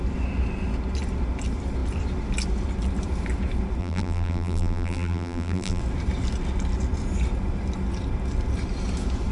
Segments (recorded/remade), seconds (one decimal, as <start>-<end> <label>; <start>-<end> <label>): 0.0-3.8 recorded; 3.8-5.8 remade; 5.8-9.3 recorded